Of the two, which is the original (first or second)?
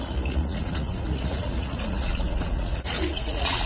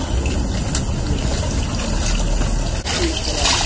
second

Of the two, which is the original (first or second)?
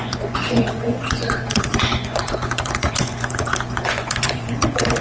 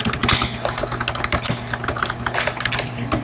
second